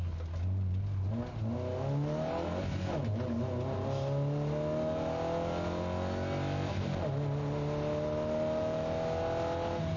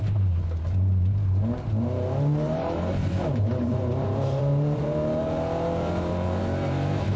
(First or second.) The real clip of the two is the first